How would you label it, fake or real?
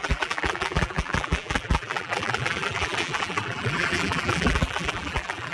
fake